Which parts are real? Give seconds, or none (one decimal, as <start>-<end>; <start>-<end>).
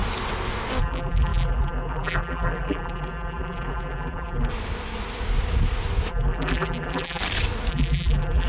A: 0.0-0.8; 4.5-6.1; 7.2-7.7